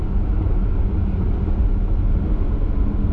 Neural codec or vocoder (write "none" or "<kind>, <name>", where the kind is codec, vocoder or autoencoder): none